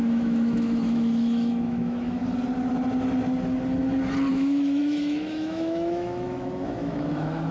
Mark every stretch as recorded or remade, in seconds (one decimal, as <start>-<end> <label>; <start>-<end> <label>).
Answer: 0.0-2.2 remade; 2.2-4.3 recorded; 4.3-7.5 remade